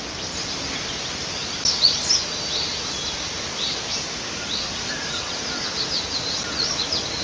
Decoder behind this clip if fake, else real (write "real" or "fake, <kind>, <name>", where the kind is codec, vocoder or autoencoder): real